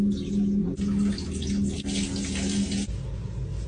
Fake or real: real